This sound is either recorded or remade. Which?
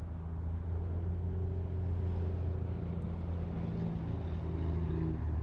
recorded